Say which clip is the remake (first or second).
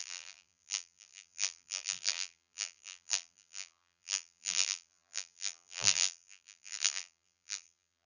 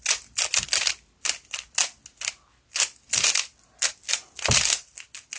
first